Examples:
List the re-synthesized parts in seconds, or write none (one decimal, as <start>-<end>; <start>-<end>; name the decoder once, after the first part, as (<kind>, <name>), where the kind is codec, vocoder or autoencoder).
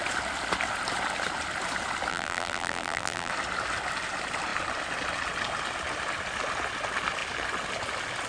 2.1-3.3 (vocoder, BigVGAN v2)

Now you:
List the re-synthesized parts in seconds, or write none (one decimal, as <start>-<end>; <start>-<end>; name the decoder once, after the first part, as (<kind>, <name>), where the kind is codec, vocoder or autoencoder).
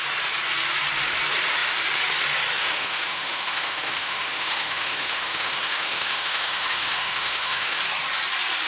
2.6-7.8 (autoencoder, DAC-VAE)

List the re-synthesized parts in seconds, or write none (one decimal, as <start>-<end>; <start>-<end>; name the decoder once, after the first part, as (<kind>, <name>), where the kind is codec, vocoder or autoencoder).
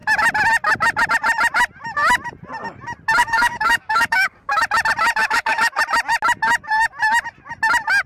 3.2-4.6 (codec, DAC); 5.2-5.8